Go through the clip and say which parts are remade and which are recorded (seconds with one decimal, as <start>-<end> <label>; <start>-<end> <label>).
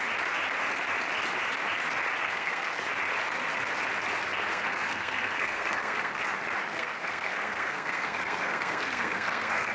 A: 0.0-2.2 recorded; 2.2-2.8 remade; 2.8-4.5 recorded; 4.5-6.2 remade; 6.2-6.7 recorded; 6.7-9.7 remade